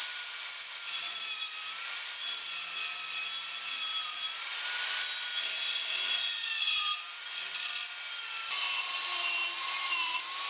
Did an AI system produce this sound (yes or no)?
no